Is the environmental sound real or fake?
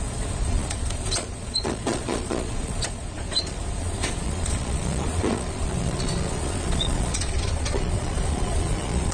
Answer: fake